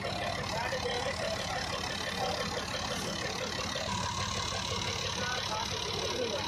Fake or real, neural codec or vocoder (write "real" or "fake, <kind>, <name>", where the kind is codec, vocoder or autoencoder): real